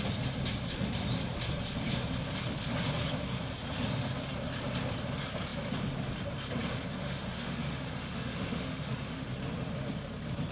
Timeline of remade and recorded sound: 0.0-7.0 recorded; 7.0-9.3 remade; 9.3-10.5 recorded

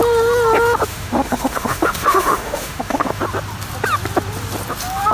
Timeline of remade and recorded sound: 0.0-0.9 recorded; 0.9-3.2 remade; 3.2-5.1 recorded

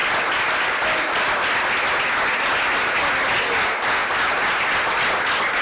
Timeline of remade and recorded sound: 0.0-5.6 recorded

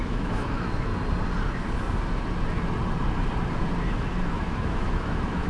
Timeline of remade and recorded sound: 0.0-0.9 remade; 0.9-3.9 recorded; 3.9-5.5 remade